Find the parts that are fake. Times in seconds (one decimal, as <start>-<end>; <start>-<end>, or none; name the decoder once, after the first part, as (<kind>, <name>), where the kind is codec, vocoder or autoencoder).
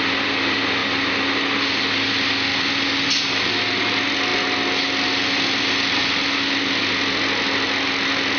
none